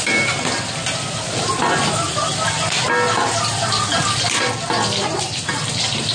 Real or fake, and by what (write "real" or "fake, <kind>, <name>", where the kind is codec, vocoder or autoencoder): real